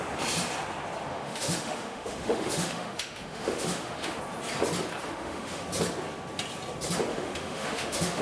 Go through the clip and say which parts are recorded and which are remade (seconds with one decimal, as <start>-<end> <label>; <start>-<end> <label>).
0.0-1.1 recorded; 1.1-4.2 remade; 4.2-5.0 recorded; 5.0-5.6 remade; 5.6-7.1 recorded; 7.1-8.2 remade